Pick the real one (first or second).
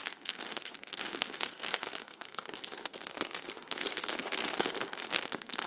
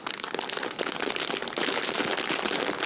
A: second